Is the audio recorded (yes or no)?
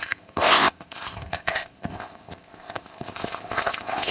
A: no